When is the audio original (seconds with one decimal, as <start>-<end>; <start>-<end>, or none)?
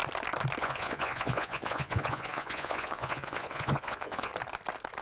0.0-0.6; 4.3-5.0